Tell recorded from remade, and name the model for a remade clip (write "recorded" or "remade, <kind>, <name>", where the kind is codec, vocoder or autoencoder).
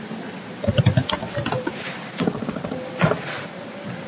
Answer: remade, vocoder, BigVGAN v2